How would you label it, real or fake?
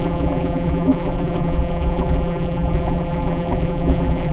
fake